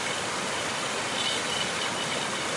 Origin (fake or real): real